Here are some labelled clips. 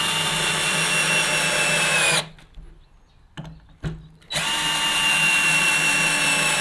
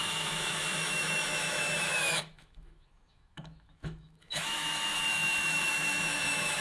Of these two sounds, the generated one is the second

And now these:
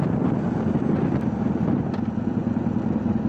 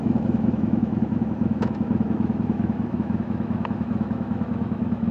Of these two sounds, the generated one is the second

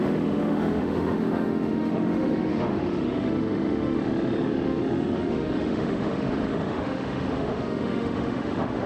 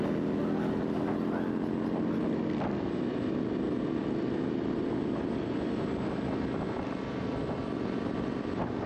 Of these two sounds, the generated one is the first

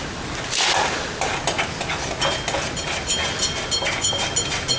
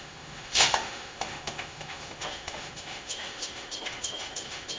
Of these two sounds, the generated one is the second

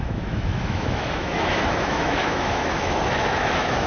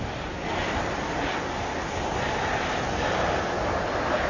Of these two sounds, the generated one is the first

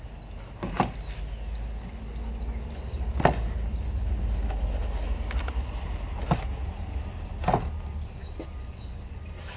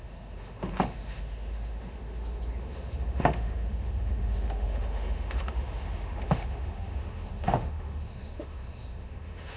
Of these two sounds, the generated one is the second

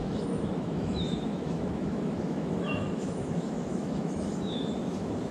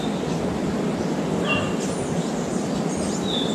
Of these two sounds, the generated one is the first